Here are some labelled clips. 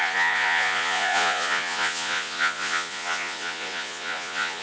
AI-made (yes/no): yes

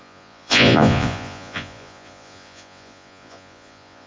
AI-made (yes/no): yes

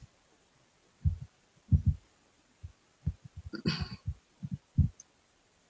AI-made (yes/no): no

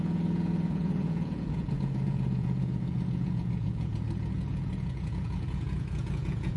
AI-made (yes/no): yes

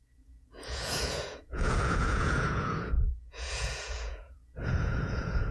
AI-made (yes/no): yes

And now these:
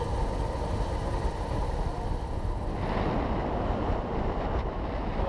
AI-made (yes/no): no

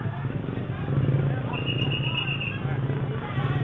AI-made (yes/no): no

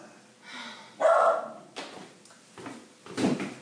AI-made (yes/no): no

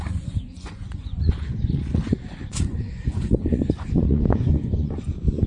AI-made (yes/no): yes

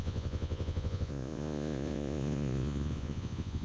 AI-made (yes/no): yes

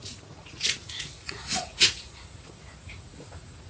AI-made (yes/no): yes